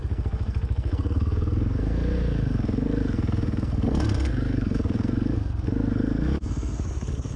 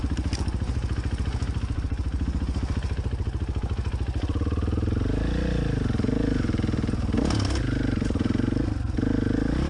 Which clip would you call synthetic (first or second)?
first